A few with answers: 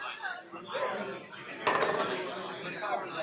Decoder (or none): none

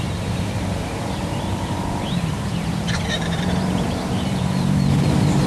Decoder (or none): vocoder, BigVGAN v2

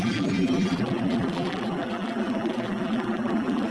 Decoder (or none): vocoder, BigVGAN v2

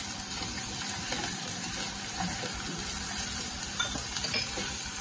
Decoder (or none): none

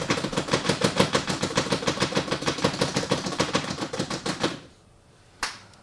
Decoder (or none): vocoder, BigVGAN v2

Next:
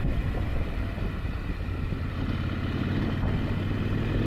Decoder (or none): none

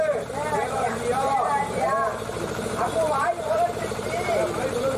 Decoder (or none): vocoder, BigVGAN v2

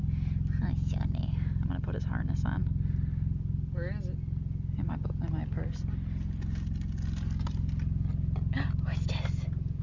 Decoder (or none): none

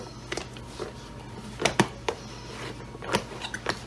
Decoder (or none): none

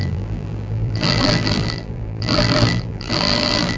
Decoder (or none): vocoder, BigVGAN v2